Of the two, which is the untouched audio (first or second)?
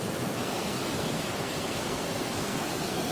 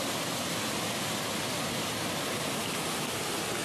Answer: second